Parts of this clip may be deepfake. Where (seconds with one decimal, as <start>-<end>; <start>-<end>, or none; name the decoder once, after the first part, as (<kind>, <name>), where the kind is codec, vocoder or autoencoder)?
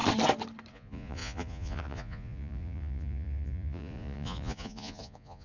0.7-5.4 (vocoder, Vocos)